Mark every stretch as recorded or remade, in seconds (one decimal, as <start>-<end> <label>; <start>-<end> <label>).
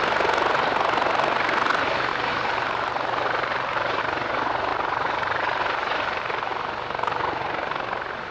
0.0-2.1 recorded; 2.1-4.0 remade; 4.0-4.7 recorded; 4.7-6.5 remade; 6.5-8.3 recorded